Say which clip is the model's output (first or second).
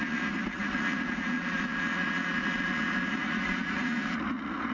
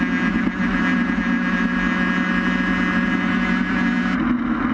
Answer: first